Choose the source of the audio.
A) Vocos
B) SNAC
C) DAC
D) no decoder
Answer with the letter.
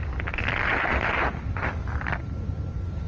D